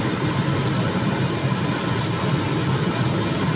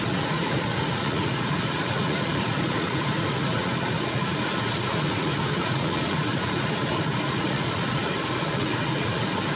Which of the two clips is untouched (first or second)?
first